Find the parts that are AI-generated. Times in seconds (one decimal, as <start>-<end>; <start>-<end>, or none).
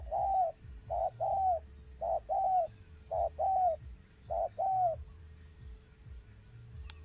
none